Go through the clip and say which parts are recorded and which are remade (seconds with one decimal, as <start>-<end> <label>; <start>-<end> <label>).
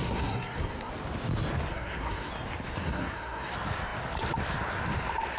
0.0-0.9 remade; 0.9-1.7 recorded; 1.7-2.3 remade; 2.3-2.8 recorded; 2.8-3.5 remade; 3.5-5.4 recorded